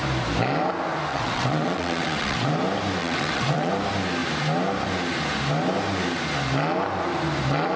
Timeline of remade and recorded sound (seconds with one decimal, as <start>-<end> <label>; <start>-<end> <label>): 0.0-1.1 recorded; 1.1-2.5 remade; 2.5-3.0 recorded; 3.0-3.7 remade; 3.7-7.8 recorded